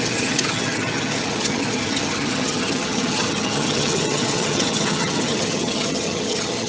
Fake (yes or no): yes